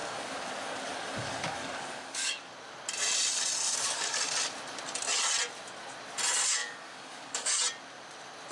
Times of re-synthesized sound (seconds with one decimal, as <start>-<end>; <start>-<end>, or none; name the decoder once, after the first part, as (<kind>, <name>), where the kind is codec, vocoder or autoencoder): 0.0-2.5 (codec, DAC); 3.7-4.2; 6.6-7.6